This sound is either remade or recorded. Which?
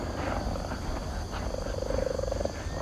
recorded